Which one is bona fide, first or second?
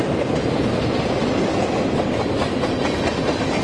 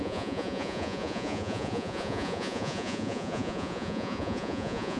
first